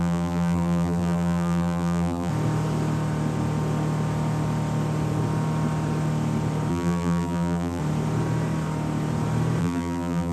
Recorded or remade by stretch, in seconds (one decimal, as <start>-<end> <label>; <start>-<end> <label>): 0.0-2.3 remade; 2.3-6.7 recorded; 6.7-7.8 remade; 7.8-9.6 recorded; 9.6-10.3 remade